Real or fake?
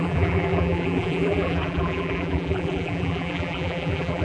fake